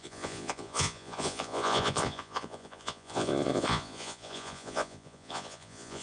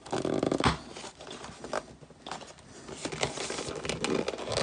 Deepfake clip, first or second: first